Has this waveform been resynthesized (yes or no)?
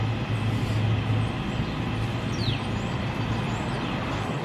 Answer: no